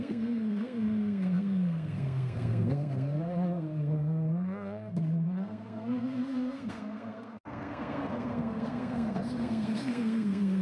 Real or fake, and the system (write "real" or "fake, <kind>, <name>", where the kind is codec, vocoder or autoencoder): fake, codec, SNAC